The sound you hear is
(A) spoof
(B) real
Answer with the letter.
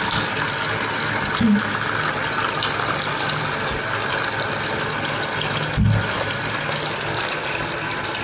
B